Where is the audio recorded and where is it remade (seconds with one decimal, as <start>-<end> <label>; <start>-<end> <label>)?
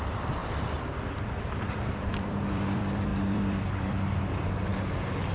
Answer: 0.0-0.4 remade; 0.4-1.1 recorded; 1.1-4.7 remade; 4.7-5.3 recorded